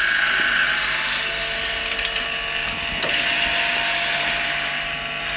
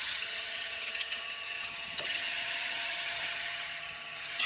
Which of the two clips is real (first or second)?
first